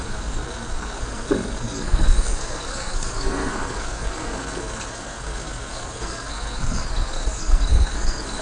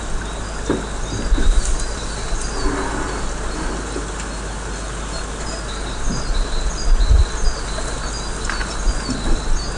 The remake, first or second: first